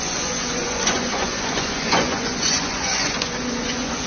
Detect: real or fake fake